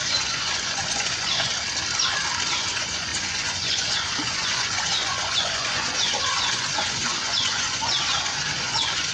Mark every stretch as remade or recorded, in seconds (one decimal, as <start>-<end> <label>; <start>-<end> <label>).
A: 0.0-1.5 remade; 1.5-2.5 recorded; 2.5-9.1 remade